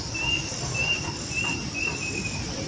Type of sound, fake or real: real